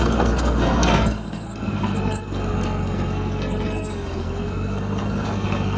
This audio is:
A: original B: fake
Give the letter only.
B